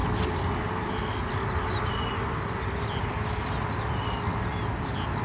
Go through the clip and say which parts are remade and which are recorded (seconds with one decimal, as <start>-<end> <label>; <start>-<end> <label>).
0.0-5.2 recorded

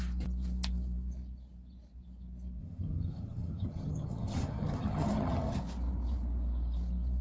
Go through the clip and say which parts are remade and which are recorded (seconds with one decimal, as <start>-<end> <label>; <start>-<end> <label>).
0.0-2.6 recorded; 2.6-5.6 remade; 5.6-7.2 recorded

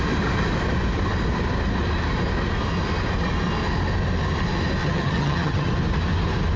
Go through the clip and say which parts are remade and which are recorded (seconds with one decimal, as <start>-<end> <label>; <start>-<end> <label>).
0.0-4.8 recorded; 4.8-5.7 remade; 5.7-6.6 recorded

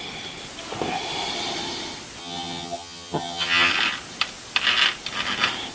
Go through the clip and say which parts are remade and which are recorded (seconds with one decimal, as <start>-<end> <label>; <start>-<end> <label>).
0.0-2.2 recorded; 2.2-3.7 remade; 3.7-5.7 recorded

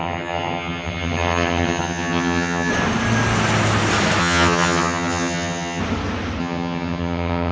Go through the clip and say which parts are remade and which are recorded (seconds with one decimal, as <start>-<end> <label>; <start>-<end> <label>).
0.0-2.7 remade; 2.7-4.2 recorded; 4.2-5.8 remade; 5.8-6.4 recorded; 6.4-7.5 remade

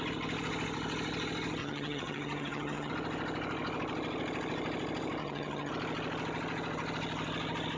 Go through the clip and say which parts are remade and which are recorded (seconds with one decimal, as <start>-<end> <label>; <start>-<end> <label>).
0.0-1.6 recorded; 1.6-2.9 remade; 2.9-5.2 recorded; 5.2-5.7 remade; 5.7-7.8 recorded

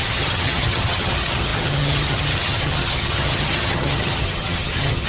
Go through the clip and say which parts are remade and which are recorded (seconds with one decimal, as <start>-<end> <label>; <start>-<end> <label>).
0.0-5.1 remade

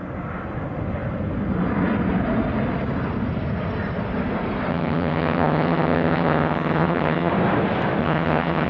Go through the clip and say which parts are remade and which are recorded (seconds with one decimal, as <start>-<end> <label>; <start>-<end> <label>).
0.0-4.7 recorded; 4.7-7.3 remade; 7.3-8.0 recorded; 8.0-8.7 remade